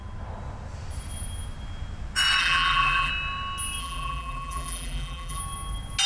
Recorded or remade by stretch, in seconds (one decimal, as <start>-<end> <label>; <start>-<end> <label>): 0.0-2.4 recorded; 2.4-3.1 remade; 3.1-3.8 recorded; 3.8-5.4 remade; 5.4-6.1 recorded

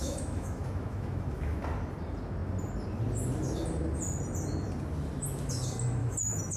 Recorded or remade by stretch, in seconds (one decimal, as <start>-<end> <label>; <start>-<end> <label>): 0.0-1.6 remade; 1.6-6.0 recorded; 6.0-6.6 remade

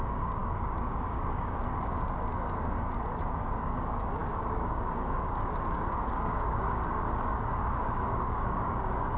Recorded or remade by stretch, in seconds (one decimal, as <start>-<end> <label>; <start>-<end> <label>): 0.0-9.2 remade

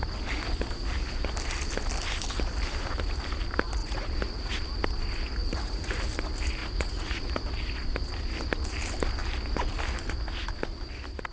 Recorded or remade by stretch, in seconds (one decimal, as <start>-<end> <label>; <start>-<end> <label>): 0.0-3.8 recorded; 3.8-4.5 remade; 4.5-5.4 recorded; 5.4-6.0 remade; 6.0-6.6 recorded; 6.6-7.4 remade; 7.4-11.3 recorded

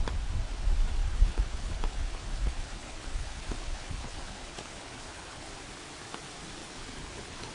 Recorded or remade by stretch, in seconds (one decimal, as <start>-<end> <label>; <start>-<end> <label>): 0.0-1.0 recorded; 1.0-5.5 remade; 5.5-6.6 recorded; 6.6-7.5 remade